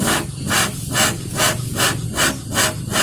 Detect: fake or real real